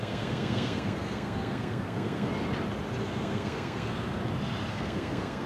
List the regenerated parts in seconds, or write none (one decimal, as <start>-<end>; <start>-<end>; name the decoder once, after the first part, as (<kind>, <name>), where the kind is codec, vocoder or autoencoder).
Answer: 0.0-2.3 (codec, SNAC); 3.0-4.2; 4.7-5.5